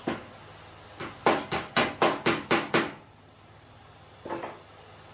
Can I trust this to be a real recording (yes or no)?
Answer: yes